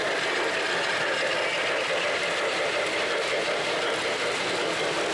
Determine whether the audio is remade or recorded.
recorded